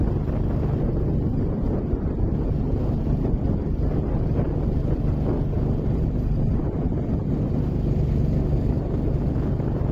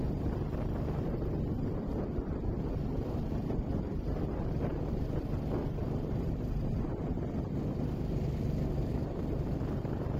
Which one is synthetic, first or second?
second